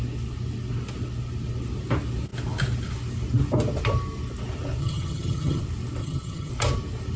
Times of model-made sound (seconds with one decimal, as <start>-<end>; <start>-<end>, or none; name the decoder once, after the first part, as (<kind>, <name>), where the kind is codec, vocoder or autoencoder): 4.8-5.6 (vocoder, HiFi-GAN); 6.0-6.5